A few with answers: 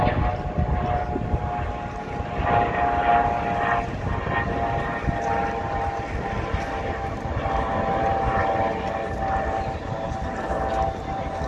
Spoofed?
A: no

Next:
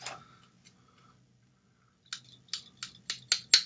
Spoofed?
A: no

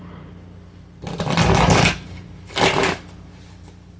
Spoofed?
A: no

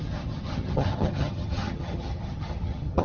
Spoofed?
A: yes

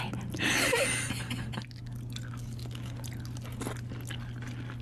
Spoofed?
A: no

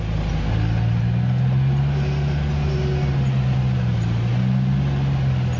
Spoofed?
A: no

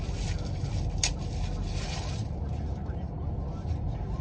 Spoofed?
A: no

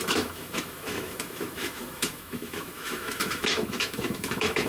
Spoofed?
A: yes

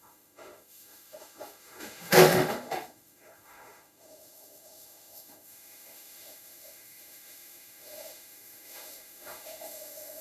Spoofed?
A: yes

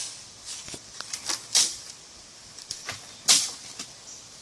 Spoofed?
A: no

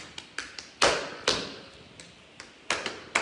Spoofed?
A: no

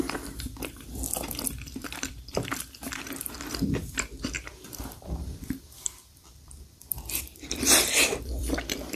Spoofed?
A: yes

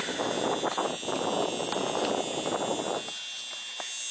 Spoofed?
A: no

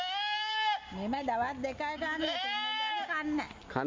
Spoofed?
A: no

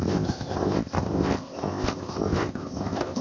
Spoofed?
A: yes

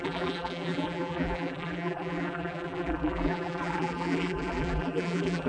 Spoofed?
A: yes